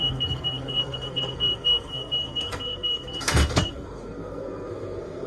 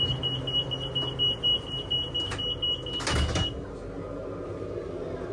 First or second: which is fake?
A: first